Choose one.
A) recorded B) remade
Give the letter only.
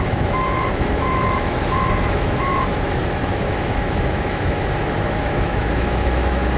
B